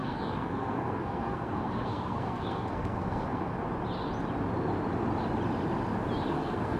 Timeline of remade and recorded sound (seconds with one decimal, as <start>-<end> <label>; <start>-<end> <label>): 0.0-3.5 remade; 3.5-6.3 recorded; 6.3-6.8 remade